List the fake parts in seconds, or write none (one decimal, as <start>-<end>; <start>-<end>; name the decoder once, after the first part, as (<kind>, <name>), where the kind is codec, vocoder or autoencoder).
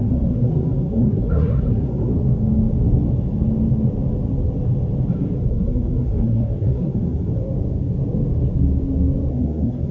0.0-2.1 (codec, SNAC); 5.5-7.3; 9.3-9.9